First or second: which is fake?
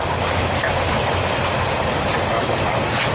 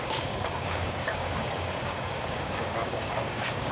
second